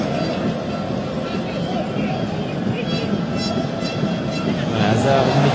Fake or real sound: real